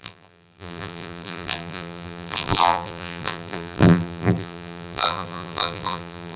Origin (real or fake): fake